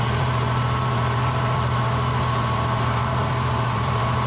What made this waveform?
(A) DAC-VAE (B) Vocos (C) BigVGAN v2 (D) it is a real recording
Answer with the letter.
C